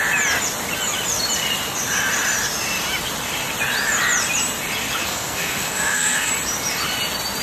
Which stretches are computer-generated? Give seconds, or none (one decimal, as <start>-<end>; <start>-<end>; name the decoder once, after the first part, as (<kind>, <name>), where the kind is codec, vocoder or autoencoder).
5.0-6.3 (codec, SNAC)